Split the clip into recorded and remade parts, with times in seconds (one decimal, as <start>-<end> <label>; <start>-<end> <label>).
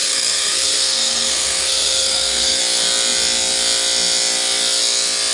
0.0-2.6 remade; 2.6-5.3 recorded